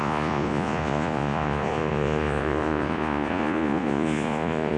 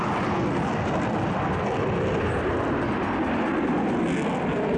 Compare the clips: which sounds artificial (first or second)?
first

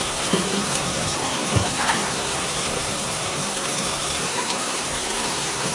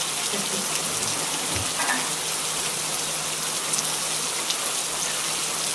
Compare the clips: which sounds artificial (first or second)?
first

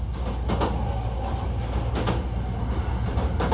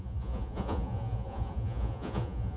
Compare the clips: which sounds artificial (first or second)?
second